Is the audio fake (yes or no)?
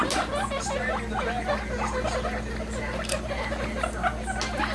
no